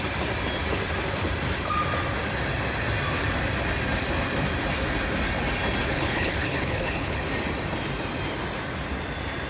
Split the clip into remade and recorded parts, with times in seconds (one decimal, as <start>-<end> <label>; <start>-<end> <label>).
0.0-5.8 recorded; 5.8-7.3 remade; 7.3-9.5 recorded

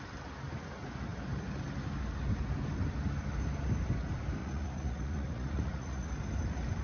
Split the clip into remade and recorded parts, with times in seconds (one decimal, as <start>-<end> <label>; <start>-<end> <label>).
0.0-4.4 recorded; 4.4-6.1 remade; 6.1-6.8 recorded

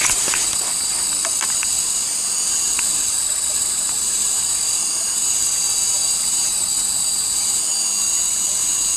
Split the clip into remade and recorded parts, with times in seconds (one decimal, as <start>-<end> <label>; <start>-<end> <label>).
0.0-6.0 recorded; 6.0-6.7 remade; 6.7-9.0 recorded